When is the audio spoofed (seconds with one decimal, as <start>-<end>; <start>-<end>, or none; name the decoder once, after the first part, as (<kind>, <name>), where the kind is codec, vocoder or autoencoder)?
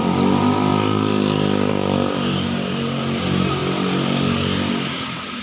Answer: none